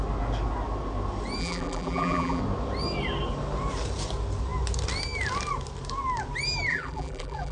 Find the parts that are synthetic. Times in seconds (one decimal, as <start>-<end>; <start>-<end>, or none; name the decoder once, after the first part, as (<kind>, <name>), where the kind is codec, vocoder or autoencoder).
1.4-2.4 (vocoder, BigVGAN v2); 6.7-7.5